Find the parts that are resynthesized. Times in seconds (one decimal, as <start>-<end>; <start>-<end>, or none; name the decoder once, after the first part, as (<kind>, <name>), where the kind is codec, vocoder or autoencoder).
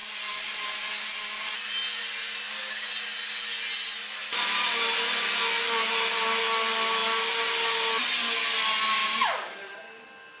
9.0-10.0 (vocoder, BigVGAN v2)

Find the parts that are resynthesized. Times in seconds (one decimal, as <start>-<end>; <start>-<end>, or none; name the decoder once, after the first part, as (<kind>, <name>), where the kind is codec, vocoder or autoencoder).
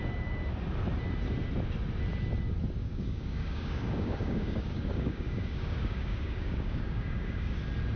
2.8-7.6 (codec, DAC)